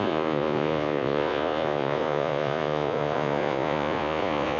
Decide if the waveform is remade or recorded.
remade